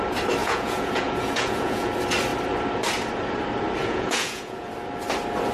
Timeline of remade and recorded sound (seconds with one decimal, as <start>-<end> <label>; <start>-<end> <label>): 0.0-0.4 recorded; 0.4-1.9 remade; 1.9-3.8 recorded; 3.8-4.7 remade; 4.7-5.5 recorded